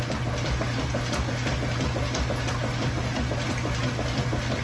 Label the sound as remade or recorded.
recorded